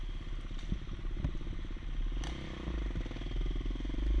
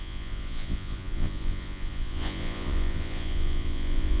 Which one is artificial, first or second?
second